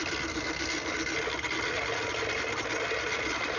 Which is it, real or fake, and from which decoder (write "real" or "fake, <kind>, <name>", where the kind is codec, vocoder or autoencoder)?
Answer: real